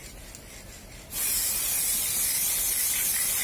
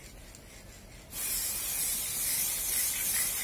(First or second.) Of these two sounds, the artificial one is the first